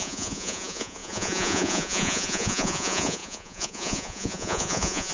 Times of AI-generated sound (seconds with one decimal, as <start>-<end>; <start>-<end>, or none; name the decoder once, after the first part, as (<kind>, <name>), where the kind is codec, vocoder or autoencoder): 0.0-5.1 (vocoder, Vocos)